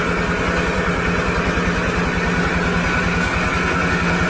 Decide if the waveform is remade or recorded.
recorded